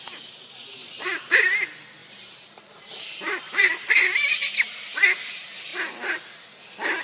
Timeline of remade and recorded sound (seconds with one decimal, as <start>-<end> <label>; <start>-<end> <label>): 0.0-0.8 recorded; 0.8-1.4 remade; 1.4-2.0 recorded; 2.0-5.3 remade; 5.3-7.0 recorded